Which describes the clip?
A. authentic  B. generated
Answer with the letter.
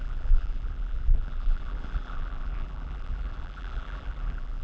B